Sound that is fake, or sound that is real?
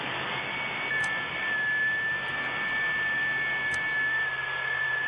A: real